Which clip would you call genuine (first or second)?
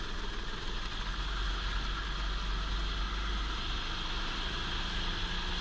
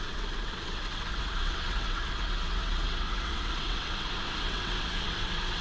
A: first